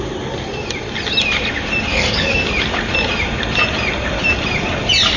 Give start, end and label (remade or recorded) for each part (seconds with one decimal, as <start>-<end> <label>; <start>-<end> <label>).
0.0-1.9 recorded; 1.9-2.5 remade; 2.5-5.2 recorded